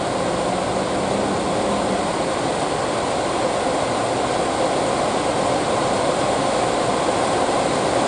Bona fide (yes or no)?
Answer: yes